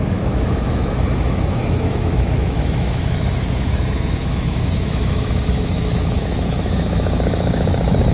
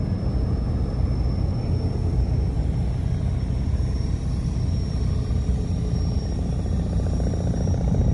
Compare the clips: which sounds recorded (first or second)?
second